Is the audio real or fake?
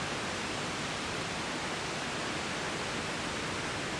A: real